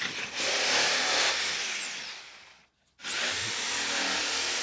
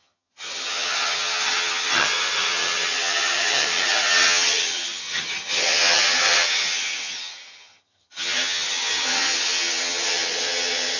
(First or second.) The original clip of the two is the first